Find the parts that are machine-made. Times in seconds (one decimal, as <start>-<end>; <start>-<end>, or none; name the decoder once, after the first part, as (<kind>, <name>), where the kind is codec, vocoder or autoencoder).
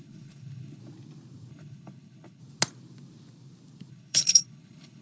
0.0-0.8 (codec, HILCodec); 1.5-2.4; 3.9-5.0